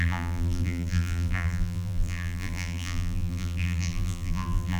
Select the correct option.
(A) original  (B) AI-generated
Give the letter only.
B